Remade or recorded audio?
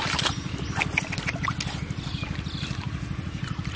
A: recorded